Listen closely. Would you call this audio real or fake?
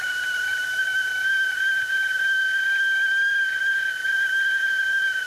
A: real